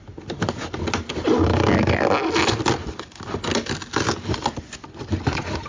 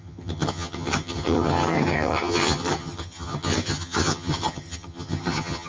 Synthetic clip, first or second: second